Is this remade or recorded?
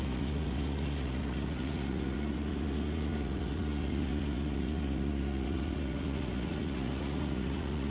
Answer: remade